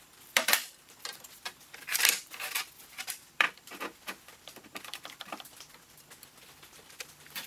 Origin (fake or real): fake